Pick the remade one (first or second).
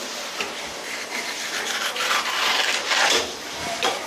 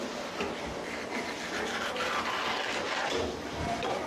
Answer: first